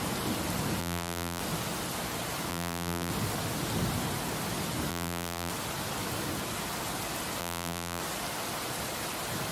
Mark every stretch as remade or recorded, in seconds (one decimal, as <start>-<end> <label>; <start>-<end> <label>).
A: 0.0-0.8 recorded; 0.8-1.4 remade; 1.4-2.5 recorded; 2.5-3.1 remade; 3.1-4.9 recorded; 4.9-5.5 remade; 5.5-7.4 recorded; 7.4-8.0 remade; 8.0-9.5 recorded

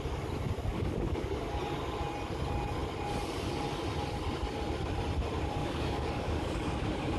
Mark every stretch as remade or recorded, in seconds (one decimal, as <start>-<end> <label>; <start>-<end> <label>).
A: 0.0-0.7 recorded; 0.7-1.6 remade; 1.6-5.6 recorded; 5.6-7.2 remade

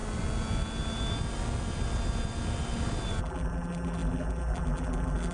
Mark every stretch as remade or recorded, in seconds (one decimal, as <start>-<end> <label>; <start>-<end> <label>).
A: 0.0-3.2 recorded; 3.2-5.3 remade